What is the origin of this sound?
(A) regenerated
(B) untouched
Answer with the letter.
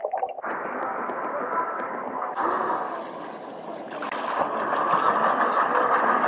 B